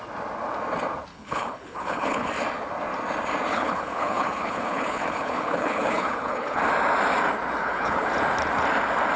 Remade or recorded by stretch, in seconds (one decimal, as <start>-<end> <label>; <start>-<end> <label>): 0.0-1.1 recorded; 1.1-2.3 remade; 2.3-3.5 recorded; 3.5-6.6 remade; 6.6-7.6 recorded; 7.6-8.1 remade; 8.1-9.2 recorded